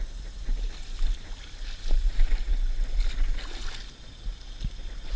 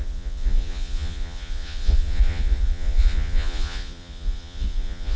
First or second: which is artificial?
second